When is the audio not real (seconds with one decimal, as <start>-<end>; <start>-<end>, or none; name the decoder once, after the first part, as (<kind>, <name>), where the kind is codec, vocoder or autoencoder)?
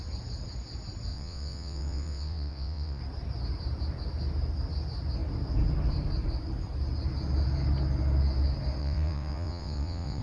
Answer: 1.1-3.0 (vocoder, WaveNeXt); 8.8-10.2